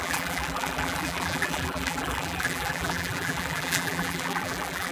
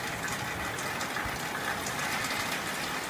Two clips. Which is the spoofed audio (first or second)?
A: first